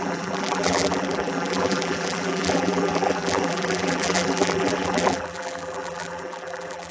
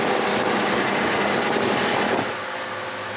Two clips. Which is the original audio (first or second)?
second